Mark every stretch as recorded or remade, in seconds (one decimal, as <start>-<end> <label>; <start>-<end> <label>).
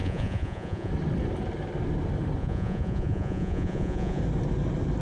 0.0-0.9 remade; 0.9-2.4 recorded; 2.4-4.2 remade; 4.2-5.0 recorded